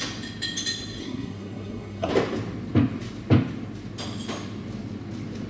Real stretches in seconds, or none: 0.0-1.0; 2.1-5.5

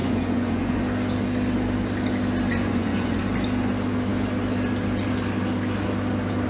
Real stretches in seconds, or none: 0.8-2.5; 3.2-6.5